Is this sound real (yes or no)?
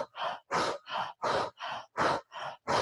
yes